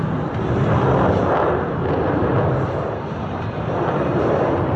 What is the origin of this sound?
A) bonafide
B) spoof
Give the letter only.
A